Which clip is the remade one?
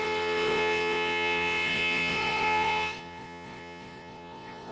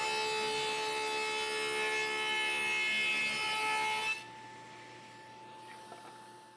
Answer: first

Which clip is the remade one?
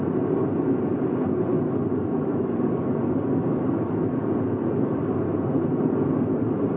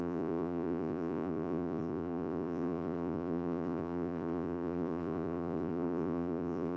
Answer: second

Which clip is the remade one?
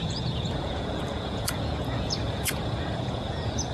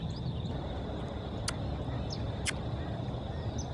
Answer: first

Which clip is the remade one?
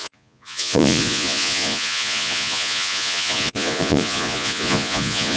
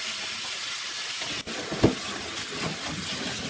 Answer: first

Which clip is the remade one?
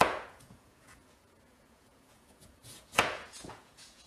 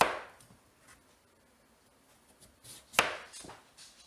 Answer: first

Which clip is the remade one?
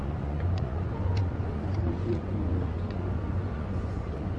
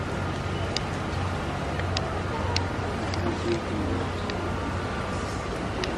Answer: first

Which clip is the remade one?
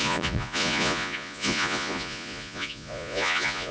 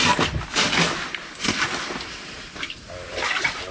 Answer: first